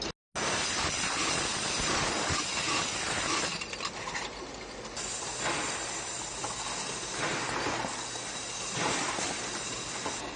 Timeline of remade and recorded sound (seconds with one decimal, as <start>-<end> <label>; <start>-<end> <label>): 0.0-10.4 recorded